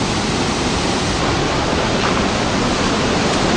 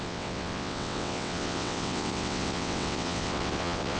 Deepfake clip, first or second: second